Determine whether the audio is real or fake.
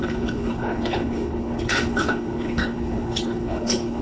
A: fake